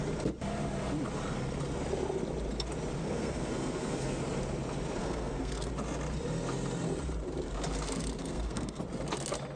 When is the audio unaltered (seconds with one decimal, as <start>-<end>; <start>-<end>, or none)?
0.0-3.0; 4.2-5.0; 5.7-8.2; 8.8-9.6